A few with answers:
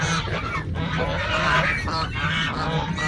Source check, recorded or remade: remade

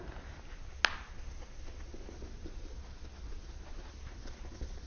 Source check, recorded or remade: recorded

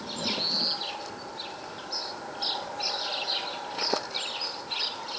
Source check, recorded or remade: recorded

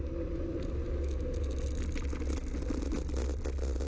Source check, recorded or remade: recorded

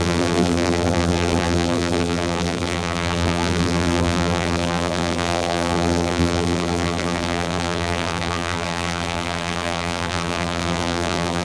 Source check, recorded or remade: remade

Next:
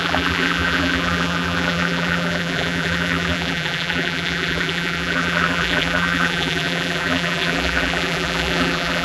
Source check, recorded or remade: remade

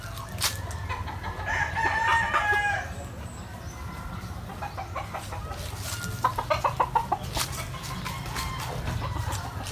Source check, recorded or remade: recorded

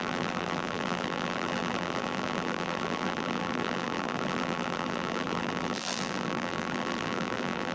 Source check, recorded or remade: remade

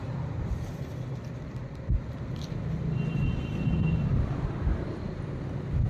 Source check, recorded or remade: remade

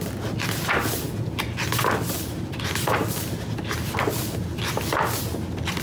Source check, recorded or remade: recorded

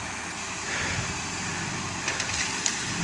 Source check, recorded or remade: recorded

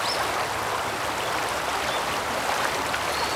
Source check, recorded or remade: recorded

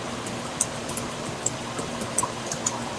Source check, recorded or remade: remade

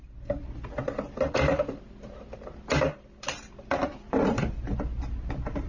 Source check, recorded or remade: remade